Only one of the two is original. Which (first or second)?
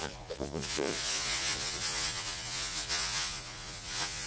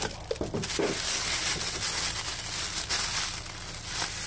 second